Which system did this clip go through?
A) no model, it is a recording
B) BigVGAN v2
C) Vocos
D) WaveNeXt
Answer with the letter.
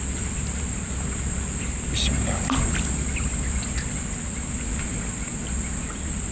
A